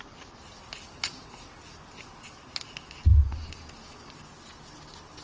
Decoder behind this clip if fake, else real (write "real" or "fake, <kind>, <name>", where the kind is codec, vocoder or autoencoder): real